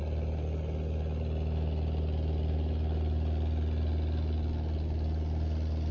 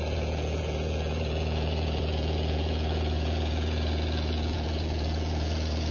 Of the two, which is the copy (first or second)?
second